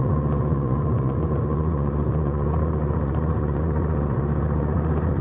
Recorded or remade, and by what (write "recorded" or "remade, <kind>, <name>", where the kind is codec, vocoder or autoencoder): remade, vocoder, Vocos